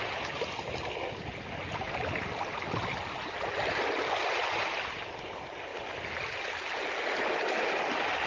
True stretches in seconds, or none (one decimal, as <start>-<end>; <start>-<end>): 0.0-8.3